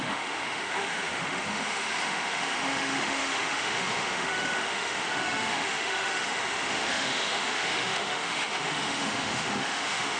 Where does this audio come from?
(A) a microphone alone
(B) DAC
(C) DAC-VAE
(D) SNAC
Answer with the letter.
C